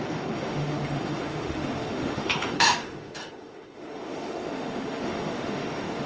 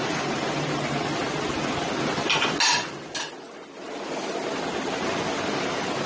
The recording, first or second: second